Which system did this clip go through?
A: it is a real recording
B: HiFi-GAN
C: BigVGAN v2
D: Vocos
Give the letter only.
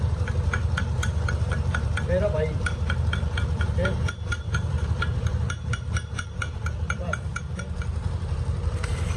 C